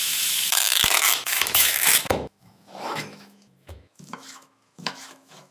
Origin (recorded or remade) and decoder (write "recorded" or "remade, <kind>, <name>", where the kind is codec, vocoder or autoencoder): remade, autoencoder, DAC-VAE